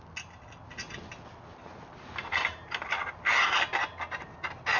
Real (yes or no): yes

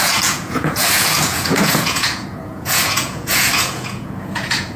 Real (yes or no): no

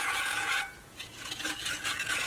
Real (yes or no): no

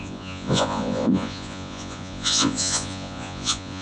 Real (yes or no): no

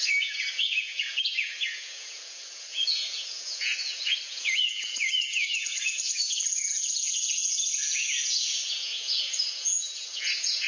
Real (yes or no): no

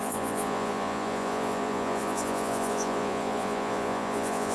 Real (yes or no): no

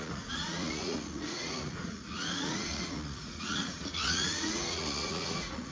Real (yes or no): no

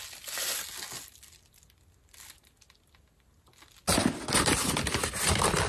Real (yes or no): yes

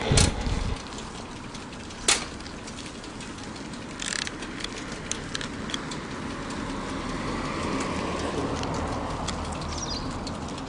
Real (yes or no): yes